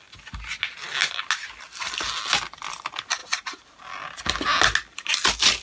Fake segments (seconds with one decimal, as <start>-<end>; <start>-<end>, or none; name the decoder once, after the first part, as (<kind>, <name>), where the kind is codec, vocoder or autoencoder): 3.2-3.8 (vocoder, BigVGAN v2)